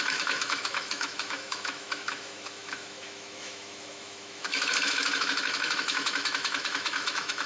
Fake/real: fake